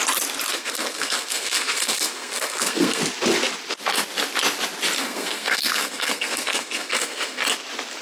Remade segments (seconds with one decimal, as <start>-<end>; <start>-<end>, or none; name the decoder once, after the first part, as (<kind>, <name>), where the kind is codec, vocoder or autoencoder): 0.5-3.0 (codec, SNAC); 5.0-7.4